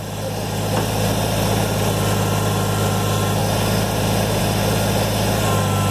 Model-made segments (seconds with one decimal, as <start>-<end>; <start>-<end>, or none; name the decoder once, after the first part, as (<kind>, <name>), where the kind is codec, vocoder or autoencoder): none